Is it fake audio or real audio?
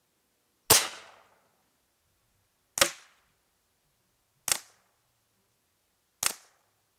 real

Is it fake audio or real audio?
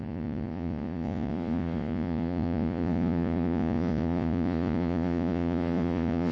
fake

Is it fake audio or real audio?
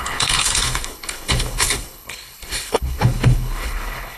fake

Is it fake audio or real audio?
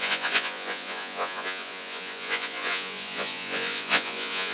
fake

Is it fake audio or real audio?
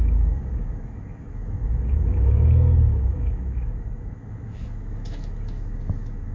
fake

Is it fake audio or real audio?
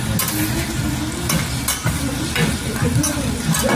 real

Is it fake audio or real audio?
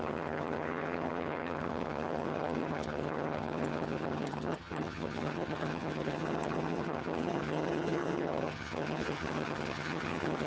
fake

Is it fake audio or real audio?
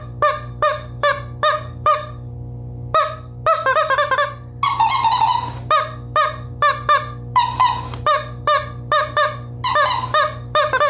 real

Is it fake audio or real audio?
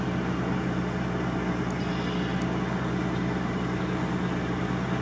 real